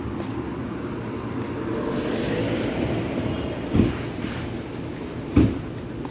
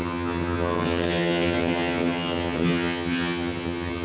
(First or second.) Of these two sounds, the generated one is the second